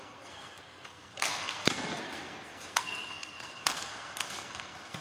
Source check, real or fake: fake